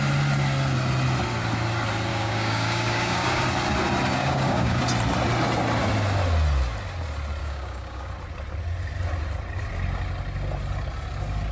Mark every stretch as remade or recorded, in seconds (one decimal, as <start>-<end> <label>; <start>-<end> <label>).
0.0-2.1 recorded; 2.1-3.4 remade; 3.4-4.2 recorded; 4.2-4.8 remade; 4.8-7.4 recorded; 7.4-8.1 remade; 8.1-11.5 recorded